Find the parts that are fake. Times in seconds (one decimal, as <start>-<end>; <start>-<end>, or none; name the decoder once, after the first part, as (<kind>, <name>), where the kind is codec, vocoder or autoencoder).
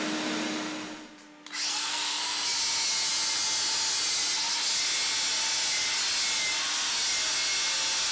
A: 1.7-2.2 (codec, SNAC)